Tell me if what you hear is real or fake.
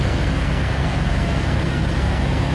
fake